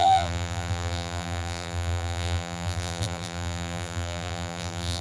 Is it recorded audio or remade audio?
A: remade